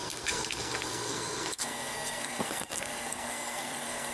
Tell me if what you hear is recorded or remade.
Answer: remade